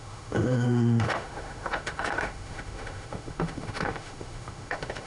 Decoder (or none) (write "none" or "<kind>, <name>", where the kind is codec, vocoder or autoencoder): autoencoder, DAC-VAE